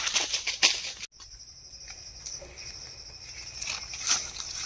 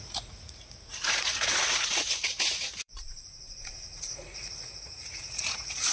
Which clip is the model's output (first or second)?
second